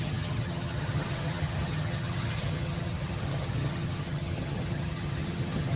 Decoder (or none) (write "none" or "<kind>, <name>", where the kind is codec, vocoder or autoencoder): vocoder, HiFi-GAN